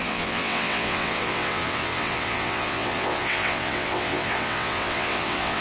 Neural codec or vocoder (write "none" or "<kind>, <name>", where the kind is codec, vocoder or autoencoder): vocoder, WaveNeXt